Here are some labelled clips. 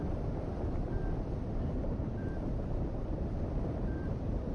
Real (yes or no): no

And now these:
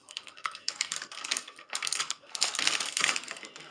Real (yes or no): no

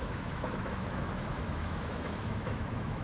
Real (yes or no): no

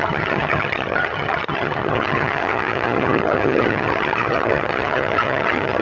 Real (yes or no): no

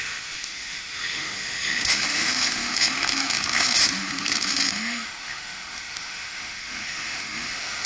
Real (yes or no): no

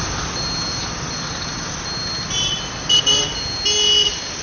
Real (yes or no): yes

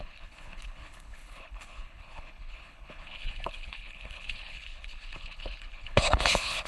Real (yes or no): no